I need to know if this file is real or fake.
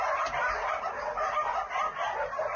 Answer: real